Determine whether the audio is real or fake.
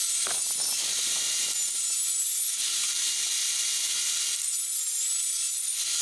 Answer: real